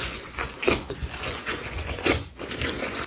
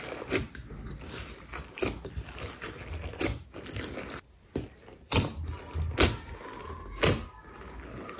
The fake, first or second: first